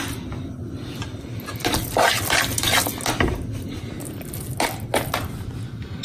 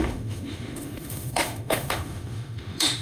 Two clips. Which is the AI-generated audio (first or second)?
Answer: second